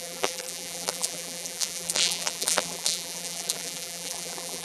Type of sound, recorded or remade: remade